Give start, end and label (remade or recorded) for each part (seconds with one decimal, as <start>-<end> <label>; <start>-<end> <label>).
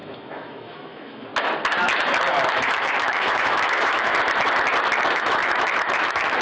0.0-1.3 remade; 1.3-2.5 recorded; 2.5-4.1 remade; 4.1-5.1 recorded; 5.1-6.4 remade